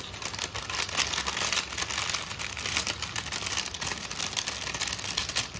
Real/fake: real